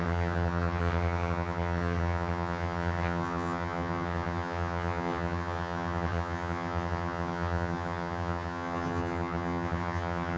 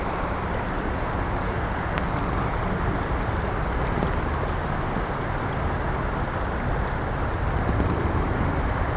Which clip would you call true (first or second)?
second